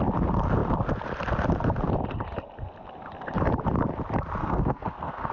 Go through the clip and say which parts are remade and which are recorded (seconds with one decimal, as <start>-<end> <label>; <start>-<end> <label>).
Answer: 0.0-4.4 recorded; 4.4-5.3 remade